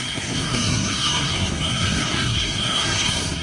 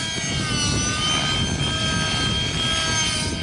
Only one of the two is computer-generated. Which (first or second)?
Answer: first